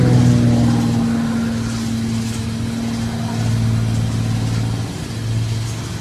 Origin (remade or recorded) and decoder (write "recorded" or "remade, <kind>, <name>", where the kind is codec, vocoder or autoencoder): recorded